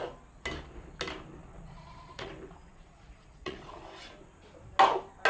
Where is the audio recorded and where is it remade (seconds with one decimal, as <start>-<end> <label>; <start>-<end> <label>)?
0.0-1.4 recorded; 1.4-2.3 remade; 2.3-2.7 recorded; 2.7-3.8 remade; 3.8-5.3 recorded